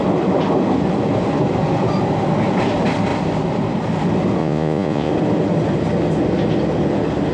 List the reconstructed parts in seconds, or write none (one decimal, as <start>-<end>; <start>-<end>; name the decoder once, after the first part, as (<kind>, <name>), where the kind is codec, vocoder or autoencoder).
4.4-5.1 (vocoder, Vocos)